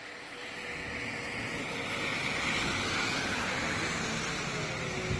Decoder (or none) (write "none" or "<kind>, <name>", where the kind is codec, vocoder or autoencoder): none